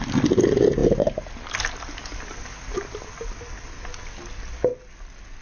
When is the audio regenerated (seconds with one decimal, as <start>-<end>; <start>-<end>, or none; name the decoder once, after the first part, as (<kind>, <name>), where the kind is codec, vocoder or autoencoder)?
none